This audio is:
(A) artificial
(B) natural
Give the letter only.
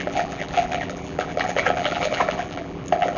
A